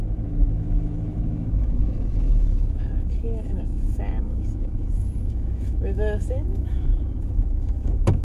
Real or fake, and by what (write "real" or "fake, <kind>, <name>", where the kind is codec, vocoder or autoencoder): fake, autoencoder, DAC-VAE